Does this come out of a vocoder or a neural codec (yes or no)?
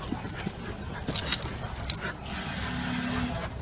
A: no